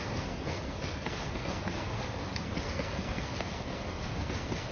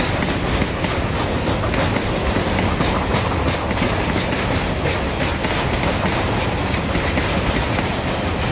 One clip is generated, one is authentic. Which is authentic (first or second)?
second